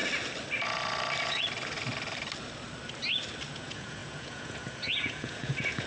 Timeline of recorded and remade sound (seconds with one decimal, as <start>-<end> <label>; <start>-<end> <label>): 0.0-3.5 recorded; 3.5-5.9 remade